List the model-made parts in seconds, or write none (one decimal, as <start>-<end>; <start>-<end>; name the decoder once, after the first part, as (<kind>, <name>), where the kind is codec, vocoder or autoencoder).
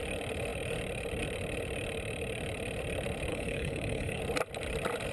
3.3-4.2 (codec, HILCodec)